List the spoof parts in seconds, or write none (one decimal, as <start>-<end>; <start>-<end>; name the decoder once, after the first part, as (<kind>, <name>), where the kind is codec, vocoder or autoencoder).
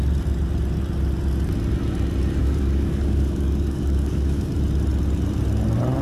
2.4-4.5 (codec, DAC)